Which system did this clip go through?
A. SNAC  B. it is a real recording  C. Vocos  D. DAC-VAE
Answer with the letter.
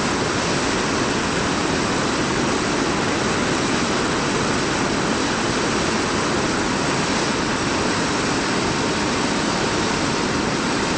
B